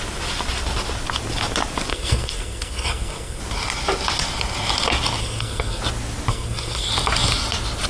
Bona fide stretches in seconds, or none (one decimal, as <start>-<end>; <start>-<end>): 0.0-1.9; 3.4-5.2; 5.8-6.3; 6.9-7.9